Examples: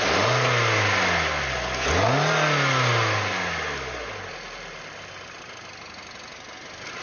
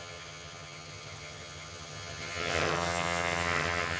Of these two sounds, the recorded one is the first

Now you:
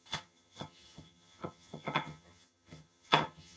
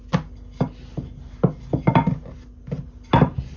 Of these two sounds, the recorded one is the second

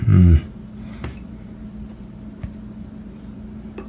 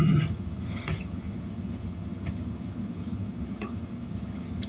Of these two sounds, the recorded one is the first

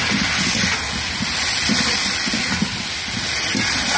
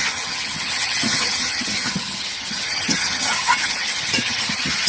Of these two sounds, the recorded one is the first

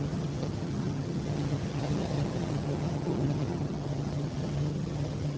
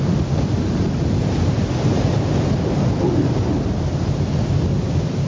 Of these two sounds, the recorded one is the second